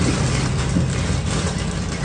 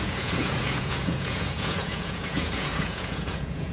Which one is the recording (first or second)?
first